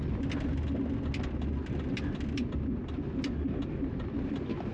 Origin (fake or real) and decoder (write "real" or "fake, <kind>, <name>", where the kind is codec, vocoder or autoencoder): real